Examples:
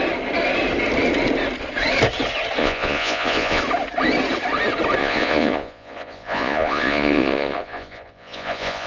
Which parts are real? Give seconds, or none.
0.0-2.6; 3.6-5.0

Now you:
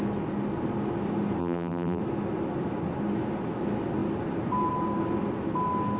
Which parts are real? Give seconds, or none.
0.0-1.4; 2.0-6.0

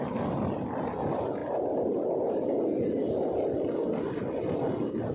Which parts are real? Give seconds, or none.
0.0-5.1